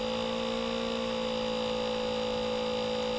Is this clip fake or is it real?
real